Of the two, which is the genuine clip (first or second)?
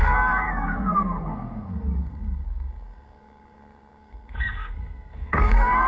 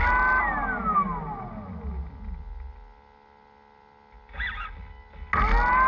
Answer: second